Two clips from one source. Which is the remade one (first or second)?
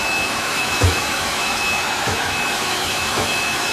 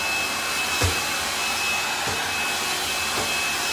first